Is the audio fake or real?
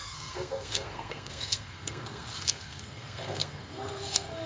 fake